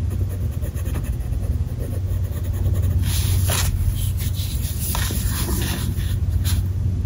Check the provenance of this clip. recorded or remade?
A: recorded